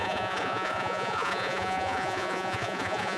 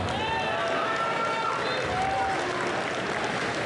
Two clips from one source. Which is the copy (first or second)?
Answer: first